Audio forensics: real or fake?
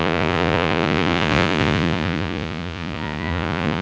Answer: fake